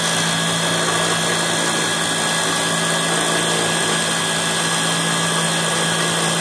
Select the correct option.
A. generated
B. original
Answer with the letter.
B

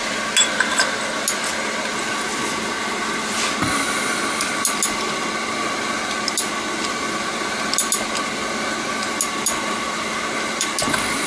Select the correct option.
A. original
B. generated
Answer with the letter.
A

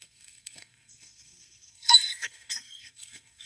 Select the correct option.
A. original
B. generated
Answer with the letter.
B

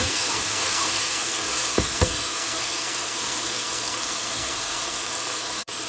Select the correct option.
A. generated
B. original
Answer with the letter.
A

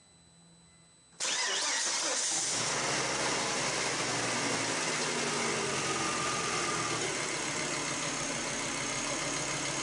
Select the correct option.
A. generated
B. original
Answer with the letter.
B